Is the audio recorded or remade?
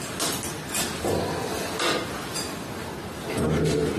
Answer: recorded